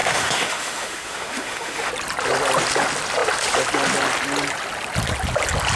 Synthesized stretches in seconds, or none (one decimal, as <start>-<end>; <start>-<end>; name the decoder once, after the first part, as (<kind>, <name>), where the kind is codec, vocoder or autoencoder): 0.0-1.9 (autoencoder, DAC-VAE)